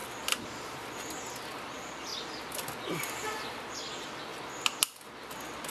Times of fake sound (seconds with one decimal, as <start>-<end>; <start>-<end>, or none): none